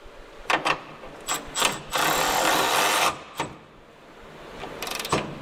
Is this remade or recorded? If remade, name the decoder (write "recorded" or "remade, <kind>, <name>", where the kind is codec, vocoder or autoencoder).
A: remade, vocoder, BigVGAN v2